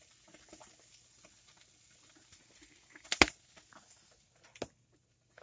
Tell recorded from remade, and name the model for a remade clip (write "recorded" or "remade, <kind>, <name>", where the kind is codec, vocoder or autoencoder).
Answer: recorded